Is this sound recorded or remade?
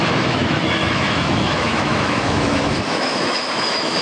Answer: remade